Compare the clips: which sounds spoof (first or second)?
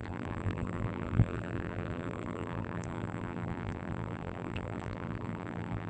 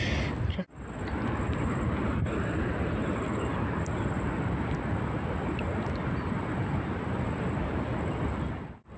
first